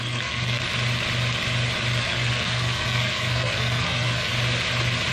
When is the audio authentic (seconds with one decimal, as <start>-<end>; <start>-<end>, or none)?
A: 0.6-2.0; 4.3-5.1

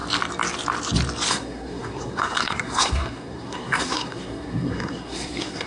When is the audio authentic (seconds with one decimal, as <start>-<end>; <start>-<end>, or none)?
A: 0.0-1.3